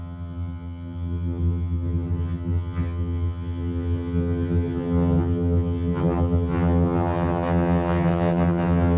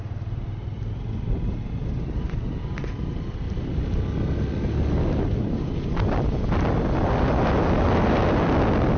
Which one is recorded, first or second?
second